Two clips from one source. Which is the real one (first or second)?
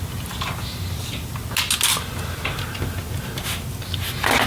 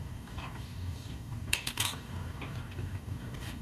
first